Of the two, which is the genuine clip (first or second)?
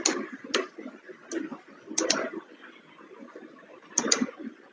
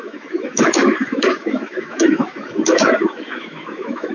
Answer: first